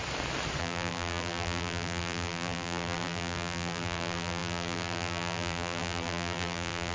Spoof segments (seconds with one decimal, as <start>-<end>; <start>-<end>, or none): 0.6-6.9